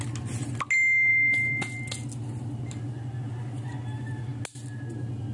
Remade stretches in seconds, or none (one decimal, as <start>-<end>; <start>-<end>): none